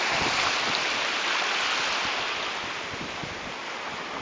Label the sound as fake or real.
real